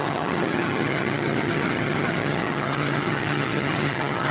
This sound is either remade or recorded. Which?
remade